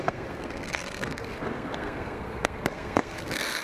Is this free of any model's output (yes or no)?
no